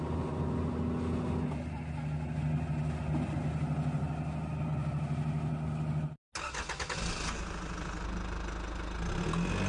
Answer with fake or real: real